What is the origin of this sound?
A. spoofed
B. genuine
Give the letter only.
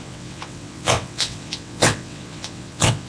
A